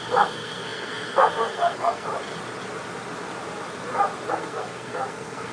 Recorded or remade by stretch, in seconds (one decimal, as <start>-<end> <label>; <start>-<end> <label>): 0.0-2.1 remade; 2.1-4.3 recorded; 4.3-5.5 remade